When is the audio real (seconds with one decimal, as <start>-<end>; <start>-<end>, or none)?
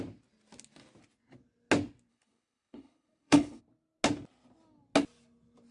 0.0-2.1; 3.6-5.7